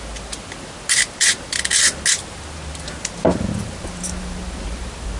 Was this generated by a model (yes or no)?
no